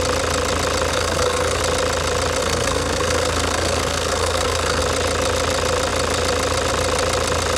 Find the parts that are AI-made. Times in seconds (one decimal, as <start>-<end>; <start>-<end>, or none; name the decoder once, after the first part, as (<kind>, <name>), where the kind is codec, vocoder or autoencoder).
0.9-1.6 (codec, SNAC); 2.4-4.8